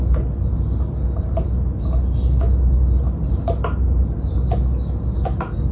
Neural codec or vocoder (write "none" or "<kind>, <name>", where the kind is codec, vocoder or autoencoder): none